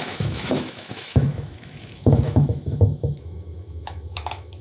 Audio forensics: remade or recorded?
remade